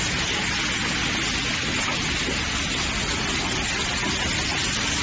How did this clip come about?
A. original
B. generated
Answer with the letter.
A